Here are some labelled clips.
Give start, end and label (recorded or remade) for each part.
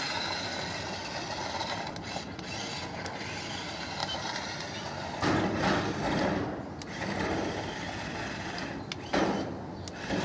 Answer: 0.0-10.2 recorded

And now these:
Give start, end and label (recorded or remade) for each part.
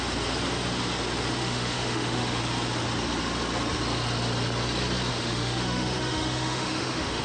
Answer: 0.0-1.4 recorded; 1.4-2.4 remade; 2.4-5.1 recorded; 5.1-7.2 remade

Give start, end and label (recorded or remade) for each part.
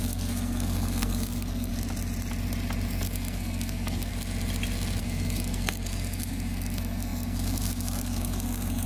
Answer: 0.0-1.7 remade; 1.7-2.9 recorded; 2.9-4.1 remade; 4.1-5.0 recorded; 5.0-8.9 remade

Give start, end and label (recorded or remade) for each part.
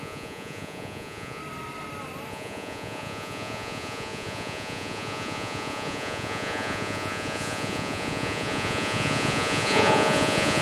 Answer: 0.0-1.4 remade; 1.4-2.3 recorded; 2.3-10.6 remade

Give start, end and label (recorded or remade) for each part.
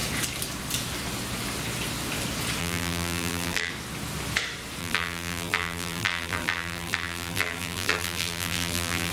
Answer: 0.0-2.6 recorded; 2.6-3.7 remade; 3.7-4.8 recorded; 4.8-9.1 remade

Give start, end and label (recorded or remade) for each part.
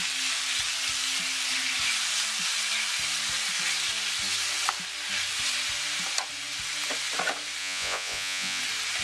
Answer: 0.0-7.6 recorded; 7.6-8.6 remade; 8.6-9.0 recorded